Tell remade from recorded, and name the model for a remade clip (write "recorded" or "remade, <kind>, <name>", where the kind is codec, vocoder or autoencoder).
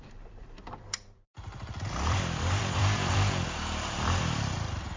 remade, vocoder, BigVGAN v2